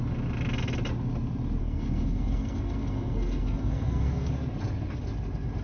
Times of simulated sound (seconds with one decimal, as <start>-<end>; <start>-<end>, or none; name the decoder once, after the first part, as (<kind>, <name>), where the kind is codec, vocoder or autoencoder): 1.6-4.3 (codec, SNAC)